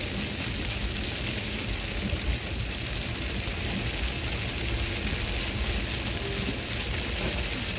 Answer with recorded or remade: recorded